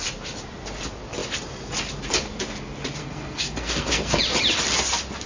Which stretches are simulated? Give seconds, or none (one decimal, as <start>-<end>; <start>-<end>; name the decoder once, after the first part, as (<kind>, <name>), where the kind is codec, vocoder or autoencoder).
3.0-4.2 (codec, SNAC)